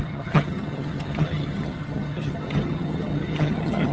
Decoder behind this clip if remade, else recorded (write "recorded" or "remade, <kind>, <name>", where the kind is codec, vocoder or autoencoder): remade, vocoder, HiFi-GAN